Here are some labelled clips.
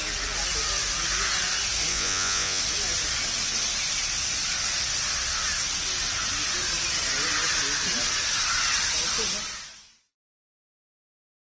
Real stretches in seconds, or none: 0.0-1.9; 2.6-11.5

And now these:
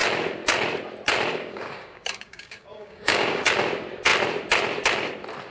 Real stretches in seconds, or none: 0.0-1.3; 3.4-5.5

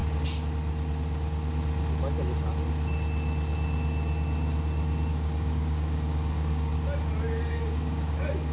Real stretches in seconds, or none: 0.0-5.1; 6.7-7.2